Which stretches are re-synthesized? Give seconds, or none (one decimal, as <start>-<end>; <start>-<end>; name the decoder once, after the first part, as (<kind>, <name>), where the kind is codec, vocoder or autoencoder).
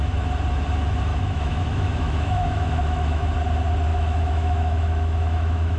1.1-3.3 (autoencoder, DAC-VAE); 3.9-5.8